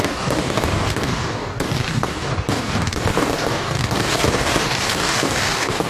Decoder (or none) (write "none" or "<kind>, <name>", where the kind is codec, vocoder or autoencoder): codec, DAC